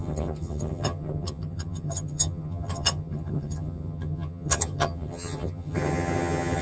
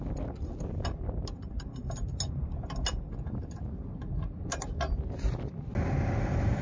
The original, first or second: second